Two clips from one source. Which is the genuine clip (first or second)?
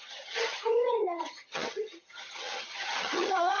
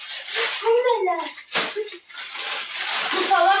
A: second